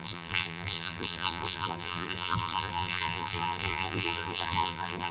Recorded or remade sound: remade